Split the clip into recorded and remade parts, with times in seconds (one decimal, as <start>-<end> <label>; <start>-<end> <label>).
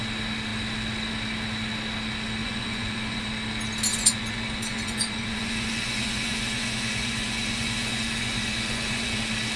0.0-2.4 recorded; 2.4-3.3 remade; 3.3-3.9 recorded; 3.9-9.2 remade; 9.2-9.6 recorded